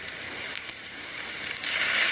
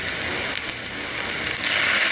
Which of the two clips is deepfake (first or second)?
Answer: first